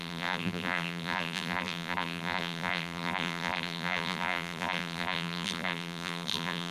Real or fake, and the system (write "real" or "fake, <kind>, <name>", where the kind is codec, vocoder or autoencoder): fake, vocoder, BigVGAN v2